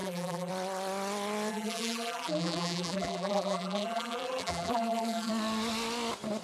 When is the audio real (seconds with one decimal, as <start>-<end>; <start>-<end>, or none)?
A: 0.5-1.5; 5.3-6.4